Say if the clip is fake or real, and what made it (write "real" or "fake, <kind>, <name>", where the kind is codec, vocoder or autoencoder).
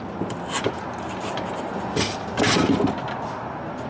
real